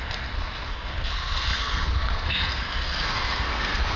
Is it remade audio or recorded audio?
remade